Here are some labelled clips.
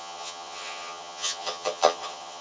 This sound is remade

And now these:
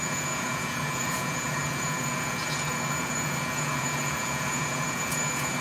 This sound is remade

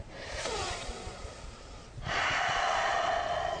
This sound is remade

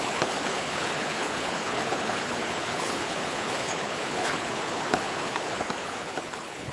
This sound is remade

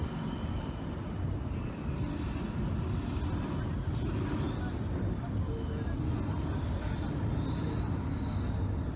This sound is recorded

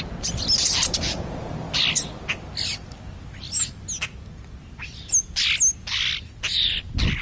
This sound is recorded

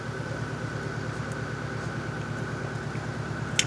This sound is recorded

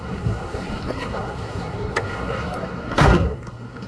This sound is remade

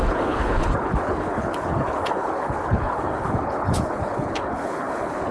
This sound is remade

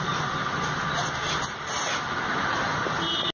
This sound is recorded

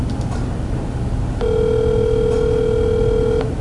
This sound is recorded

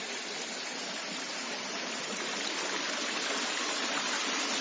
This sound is recorded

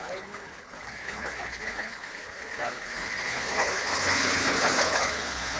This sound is remade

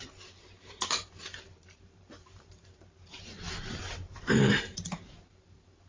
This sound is remade